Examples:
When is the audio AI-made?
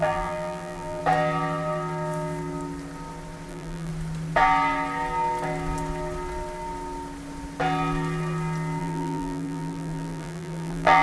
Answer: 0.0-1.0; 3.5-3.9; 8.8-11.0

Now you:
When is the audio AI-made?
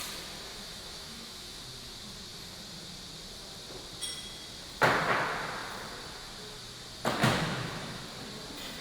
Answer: 0.5-1.6; 7.2-8.0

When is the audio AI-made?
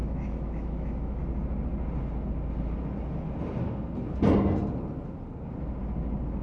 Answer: 0.0-1.2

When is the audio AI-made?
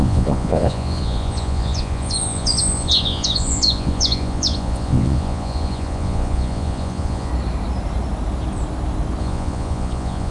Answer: 0.0-7.3; 9.2-10.3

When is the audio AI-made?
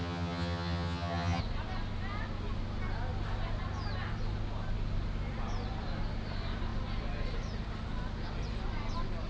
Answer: 0.0-1.4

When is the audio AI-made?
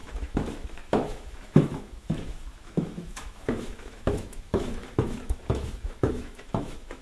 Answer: 0.0-7.0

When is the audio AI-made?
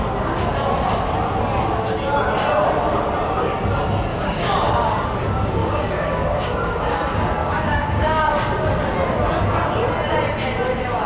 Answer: 4.1-4.7; 5.6-6.8; 7.4-8.3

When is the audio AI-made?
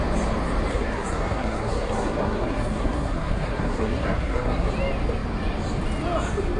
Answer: 0.7-4.7